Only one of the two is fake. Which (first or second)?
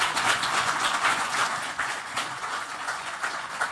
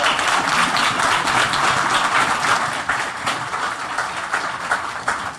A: first